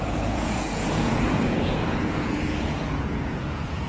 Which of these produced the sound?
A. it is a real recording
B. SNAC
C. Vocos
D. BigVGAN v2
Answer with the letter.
C